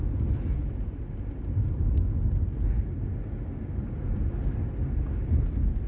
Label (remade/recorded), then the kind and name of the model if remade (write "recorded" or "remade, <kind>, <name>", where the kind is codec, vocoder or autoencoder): recorded